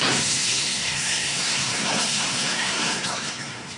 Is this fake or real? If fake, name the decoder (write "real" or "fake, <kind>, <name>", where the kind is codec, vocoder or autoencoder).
fake, codec, SNAC